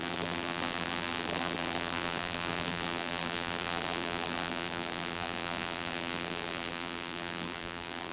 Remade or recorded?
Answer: remade